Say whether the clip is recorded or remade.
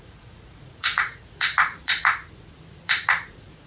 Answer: remade